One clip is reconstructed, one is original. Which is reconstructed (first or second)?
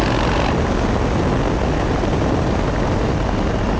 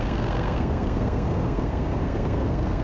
second